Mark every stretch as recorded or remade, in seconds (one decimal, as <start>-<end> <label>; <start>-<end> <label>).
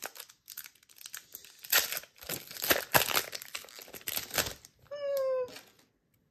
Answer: 0.0-6.3 recorded